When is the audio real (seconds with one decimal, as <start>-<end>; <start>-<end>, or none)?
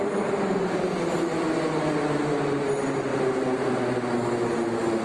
0.0-5.0